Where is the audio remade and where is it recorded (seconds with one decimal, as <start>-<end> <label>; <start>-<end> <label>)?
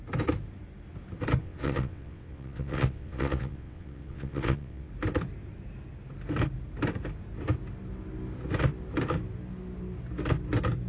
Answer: 0.0-1.4 recorded; 1.4-4.9 remade; 4.9-10.9 recorded